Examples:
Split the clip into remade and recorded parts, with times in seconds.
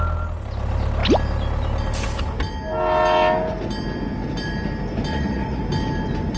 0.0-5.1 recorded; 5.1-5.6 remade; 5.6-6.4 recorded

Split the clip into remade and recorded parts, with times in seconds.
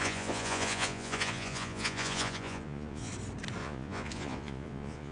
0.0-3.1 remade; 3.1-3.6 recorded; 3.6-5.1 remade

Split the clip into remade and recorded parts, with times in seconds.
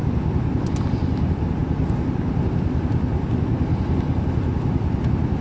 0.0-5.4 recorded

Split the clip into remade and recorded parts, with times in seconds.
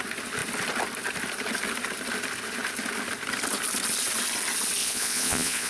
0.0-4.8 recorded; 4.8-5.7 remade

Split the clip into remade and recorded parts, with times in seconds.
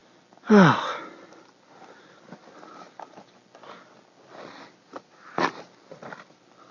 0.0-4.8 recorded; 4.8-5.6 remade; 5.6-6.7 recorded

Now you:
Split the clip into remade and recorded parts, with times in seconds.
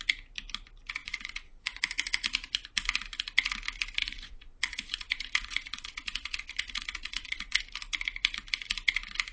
0.0-1.0 recorded; 1.0-1.8 remade; 1.8-4.0 recorded; 4.0-7.6 remade; 7.6-9.3 recorded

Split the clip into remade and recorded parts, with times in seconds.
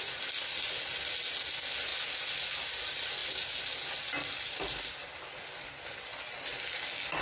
0.0-7.2 recorded